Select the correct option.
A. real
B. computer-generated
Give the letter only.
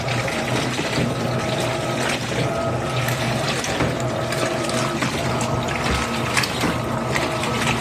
A